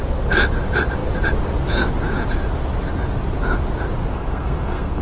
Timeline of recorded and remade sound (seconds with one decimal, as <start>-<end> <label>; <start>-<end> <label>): 0.0-4.1 recorded; 4.1-5.0 remade